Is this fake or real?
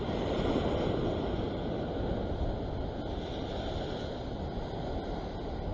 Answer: real